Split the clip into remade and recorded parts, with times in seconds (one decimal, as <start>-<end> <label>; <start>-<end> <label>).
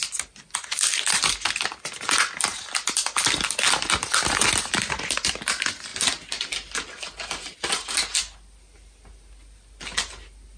0.0-10.6 recorded